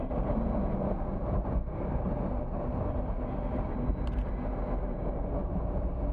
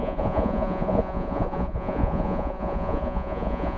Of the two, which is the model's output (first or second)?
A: second